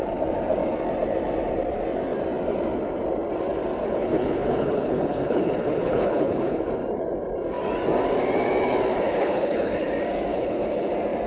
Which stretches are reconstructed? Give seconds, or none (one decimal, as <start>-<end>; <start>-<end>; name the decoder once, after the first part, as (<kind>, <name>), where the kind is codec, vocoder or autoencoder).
3.8-6.7 (codec, HILCodec); 8.9-9.9; 10.3-10.9